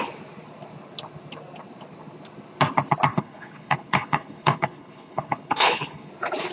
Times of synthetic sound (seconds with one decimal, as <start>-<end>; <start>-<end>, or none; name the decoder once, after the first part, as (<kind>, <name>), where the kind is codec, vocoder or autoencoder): 3.1-6.1 (codec, HILCodec)